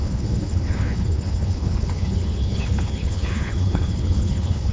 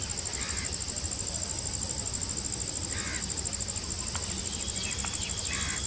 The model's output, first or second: first